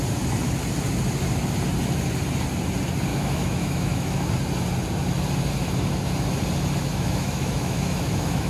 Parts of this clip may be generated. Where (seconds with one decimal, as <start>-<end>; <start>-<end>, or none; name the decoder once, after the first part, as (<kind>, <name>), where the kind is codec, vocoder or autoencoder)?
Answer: 3.1-4.3 (autoencoder, DAC-VAE); 6.8-8.5